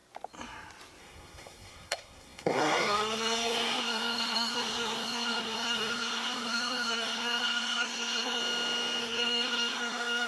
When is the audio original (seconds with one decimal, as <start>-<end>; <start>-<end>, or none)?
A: 0.0-1.0; 8.4-9.0